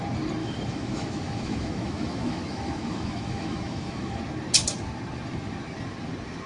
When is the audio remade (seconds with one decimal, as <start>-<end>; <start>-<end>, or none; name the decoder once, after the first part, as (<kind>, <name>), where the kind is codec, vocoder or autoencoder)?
0.4-4.2 (autoencoder, DAC-VAE)